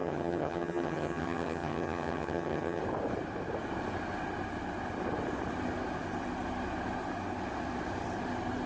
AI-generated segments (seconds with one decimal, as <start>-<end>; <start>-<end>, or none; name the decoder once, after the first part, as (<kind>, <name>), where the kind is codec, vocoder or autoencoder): 0.0-2.8 (vocoder, HiFi-GAN)